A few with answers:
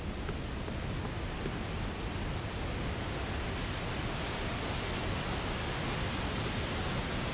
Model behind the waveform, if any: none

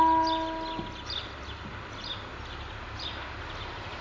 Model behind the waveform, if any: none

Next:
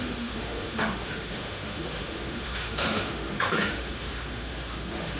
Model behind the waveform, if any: autoencoder, DAC-VAE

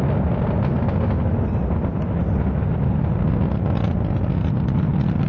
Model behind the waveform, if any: none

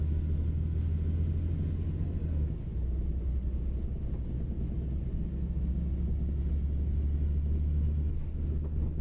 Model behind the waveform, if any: none